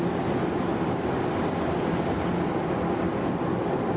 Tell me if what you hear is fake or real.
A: real